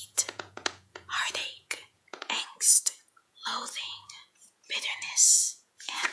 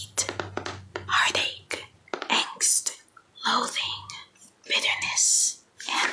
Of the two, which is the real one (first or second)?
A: second